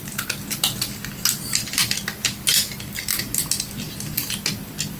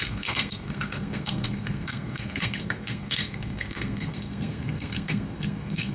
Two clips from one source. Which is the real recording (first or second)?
first